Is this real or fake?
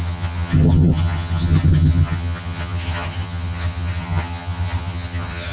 fake